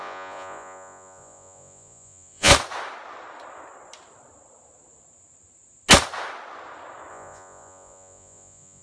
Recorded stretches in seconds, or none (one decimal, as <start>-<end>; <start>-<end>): 2.5-7.1